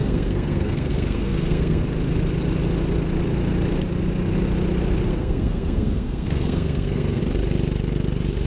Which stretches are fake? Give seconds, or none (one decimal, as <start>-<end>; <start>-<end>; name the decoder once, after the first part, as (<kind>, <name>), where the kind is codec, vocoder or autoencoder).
0.0-1.8 (codec, SNAC); 5.1-7.2